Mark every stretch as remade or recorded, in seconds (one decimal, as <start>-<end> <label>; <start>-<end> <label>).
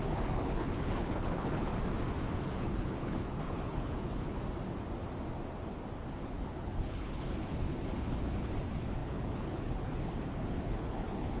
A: 0.0-1.7 remade; 1.7-2.4 recorded; 2.4-4.4 remade; 4.4-6.1 recorded; 6.1-11.4 remade